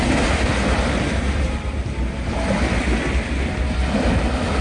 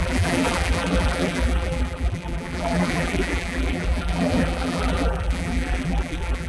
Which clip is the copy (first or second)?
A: second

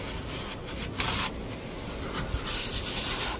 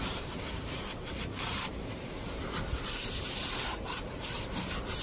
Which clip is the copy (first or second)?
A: second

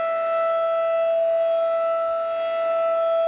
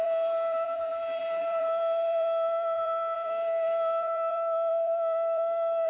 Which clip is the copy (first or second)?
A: second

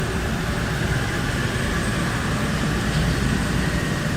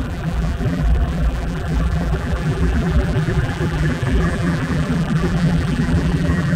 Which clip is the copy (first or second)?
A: second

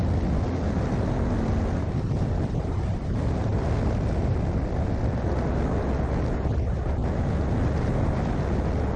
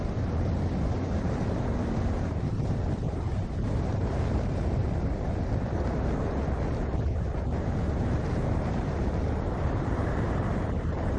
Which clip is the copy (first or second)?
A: second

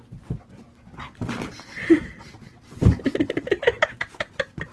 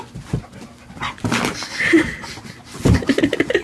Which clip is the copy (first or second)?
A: first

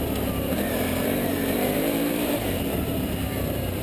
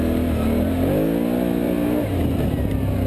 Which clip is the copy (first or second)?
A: first